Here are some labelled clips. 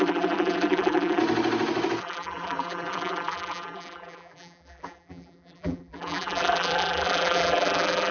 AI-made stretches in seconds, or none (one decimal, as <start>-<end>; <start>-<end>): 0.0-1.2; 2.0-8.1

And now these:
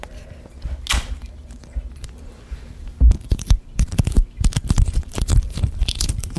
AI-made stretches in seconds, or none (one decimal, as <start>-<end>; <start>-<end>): 1.2-6.4

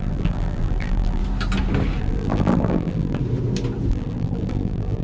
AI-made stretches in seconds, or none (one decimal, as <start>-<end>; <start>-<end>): 0.0-1.2; 2.0-3.2; 3.9-5.0

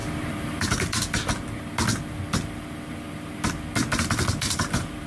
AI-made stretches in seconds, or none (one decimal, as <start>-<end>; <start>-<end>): 0.6-1.2; 4.3-5.1